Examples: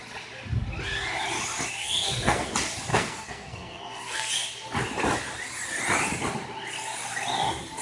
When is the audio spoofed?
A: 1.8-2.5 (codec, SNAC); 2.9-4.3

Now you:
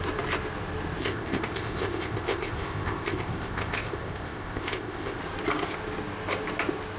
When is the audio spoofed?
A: 1.0-5.2 (codec, ZipCodec)

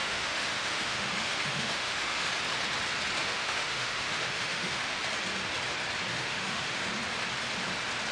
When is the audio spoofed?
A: 0.0-2.3 (autoencoder, DAC-VAE); 3.2-5.0; 6.1-6.8

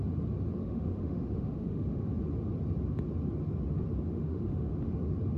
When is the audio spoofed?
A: 0.6-2.1 (autoencoder, DAC-VAE); 4.1-4.7